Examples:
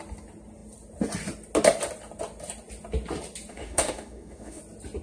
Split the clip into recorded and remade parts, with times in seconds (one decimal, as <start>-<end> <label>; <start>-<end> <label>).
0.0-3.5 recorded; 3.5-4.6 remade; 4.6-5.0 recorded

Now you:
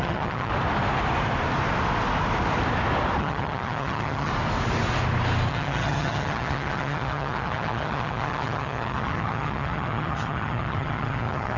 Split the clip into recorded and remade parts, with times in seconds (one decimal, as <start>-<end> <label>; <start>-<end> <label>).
0.0-0.5 remade; 0.5-3.2 recorded; 3.2-4.3 remade; 4.3-5.5 recorded; 5.5-11.6 remade

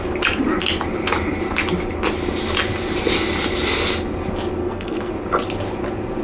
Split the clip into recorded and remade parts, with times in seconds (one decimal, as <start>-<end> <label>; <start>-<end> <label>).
0.0-4.6 recorded; 4.6-5.1 remade; 5.1-6.2 recorded

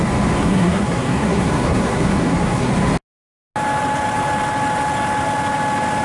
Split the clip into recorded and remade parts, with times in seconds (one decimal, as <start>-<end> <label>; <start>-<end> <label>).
0.0-0.4 recorded; 0.4-2.7 remade; 2.7-6.0 recorded

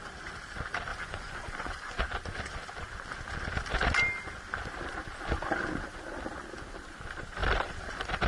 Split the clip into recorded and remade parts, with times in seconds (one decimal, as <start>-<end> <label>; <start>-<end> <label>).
0.0-0.9 recorded; 0.9-2.0 remade; 2.0-8.3 recorded